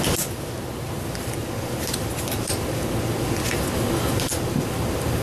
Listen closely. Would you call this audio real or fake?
real